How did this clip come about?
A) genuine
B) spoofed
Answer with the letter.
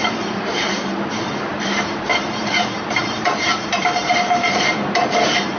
B